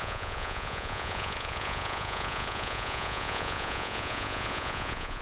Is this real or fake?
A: fake